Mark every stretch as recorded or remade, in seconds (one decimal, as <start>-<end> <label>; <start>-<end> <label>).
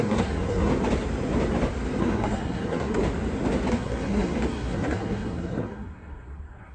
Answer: 0.0-0.7 remade; 0.7-2.0 recorded; 2.0-3.0 remade; 3.0-3.7 recorded; 3.7-6.7 remade